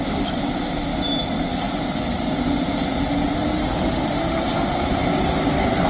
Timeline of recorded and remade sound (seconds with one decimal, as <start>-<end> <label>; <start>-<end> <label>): 0.0-3.6 recorded; 3.6-4.4 remade; 4.4-5.9 recorded